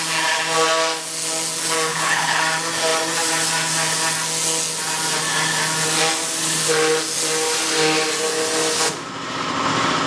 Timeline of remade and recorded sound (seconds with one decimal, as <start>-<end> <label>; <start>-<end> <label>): 0.0-1.9 recorded; 1.9-2.4 remade; 2.4-10.1 recorded